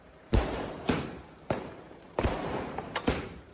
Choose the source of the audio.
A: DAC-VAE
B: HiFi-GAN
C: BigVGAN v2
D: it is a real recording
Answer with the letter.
C